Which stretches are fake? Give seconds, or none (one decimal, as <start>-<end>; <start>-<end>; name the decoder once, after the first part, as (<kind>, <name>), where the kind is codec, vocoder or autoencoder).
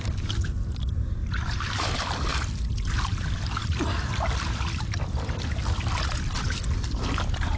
0.0-2.3 (vocoder, BigVGAN v2); 3.2-7.6